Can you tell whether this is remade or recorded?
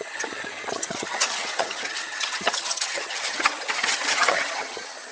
remade